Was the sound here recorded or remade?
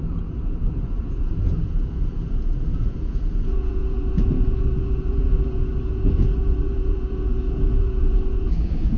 remade